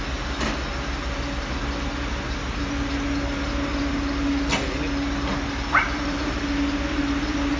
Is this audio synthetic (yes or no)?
no